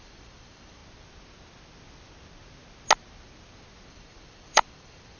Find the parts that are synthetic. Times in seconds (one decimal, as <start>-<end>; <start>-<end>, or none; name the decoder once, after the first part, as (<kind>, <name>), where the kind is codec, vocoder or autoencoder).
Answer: 0.0-0.8 (vocoder, BigVGAN v2); 3.9-5.2